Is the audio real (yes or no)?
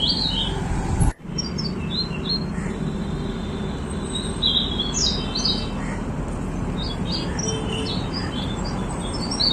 yes